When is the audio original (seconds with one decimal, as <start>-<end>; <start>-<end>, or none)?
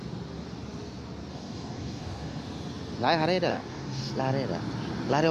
0.0-1.3; 2.4-3.5; 4.1-5.3